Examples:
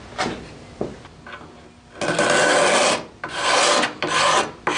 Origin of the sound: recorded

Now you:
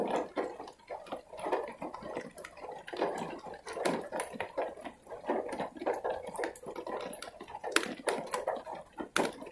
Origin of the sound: recorded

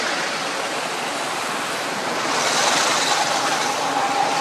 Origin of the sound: recorded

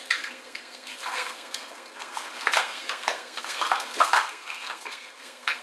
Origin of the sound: remade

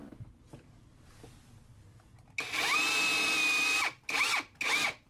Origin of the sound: recorded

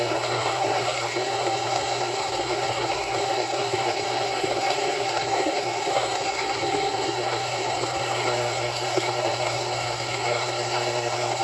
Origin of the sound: remade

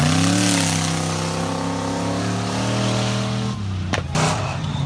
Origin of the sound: recorded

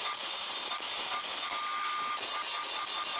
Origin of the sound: recorded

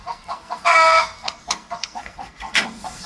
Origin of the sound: remade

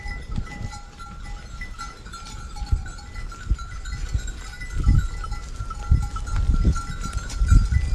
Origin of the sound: recorded